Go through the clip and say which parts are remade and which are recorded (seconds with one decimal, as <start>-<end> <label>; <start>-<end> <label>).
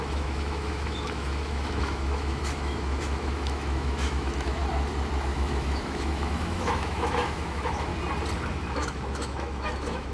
0.0-4.6 remade; 4.6-5.2 recorded; 5.2-7.9 remade; 7.9-8.5 recorded; 8.5-10.1 remade